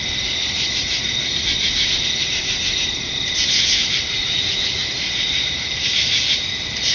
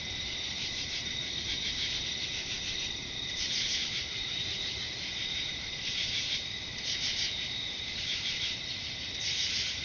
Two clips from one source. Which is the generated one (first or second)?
second